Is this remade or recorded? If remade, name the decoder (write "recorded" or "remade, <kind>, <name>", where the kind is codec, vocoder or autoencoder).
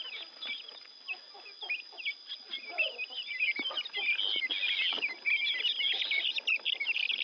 recorded